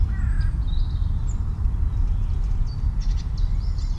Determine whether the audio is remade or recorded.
recorded